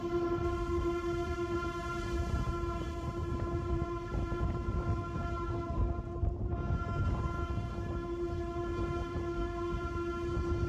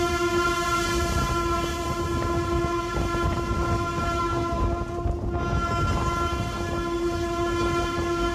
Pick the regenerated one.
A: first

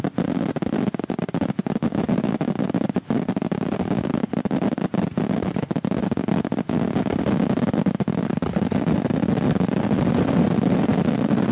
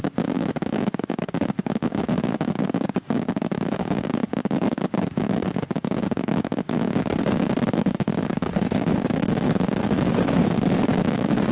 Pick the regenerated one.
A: second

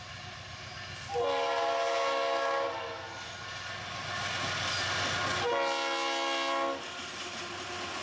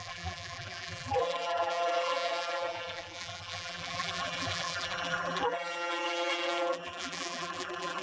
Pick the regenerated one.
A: second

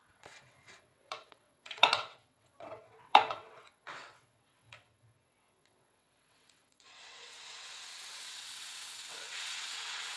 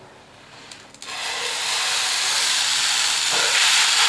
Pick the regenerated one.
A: first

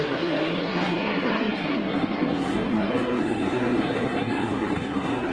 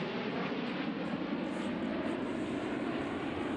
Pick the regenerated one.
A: first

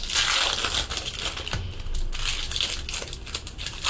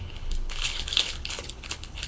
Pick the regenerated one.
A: second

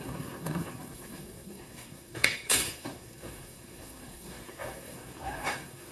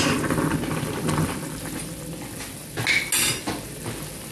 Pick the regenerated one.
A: first